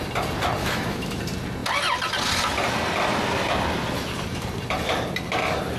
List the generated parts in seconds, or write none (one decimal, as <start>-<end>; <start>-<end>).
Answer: 0.6-1.2